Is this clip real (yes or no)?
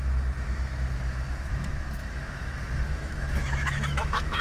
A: no